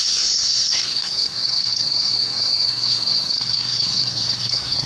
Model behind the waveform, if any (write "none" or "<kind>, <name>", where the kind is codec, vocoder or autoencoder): codec, SNAC